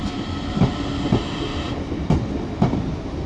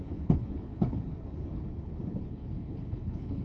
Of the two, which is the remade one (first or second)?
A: second